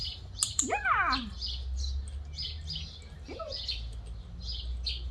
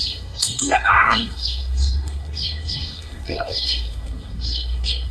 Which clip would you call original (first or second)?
first